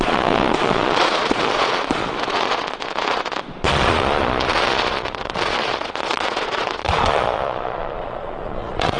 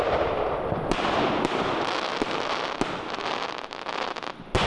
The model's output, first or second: first